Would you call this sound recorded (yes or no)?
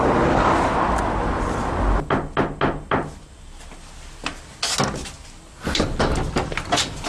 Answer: yes